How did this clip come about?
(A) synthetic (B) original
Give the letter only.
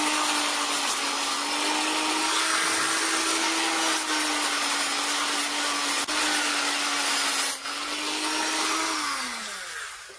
B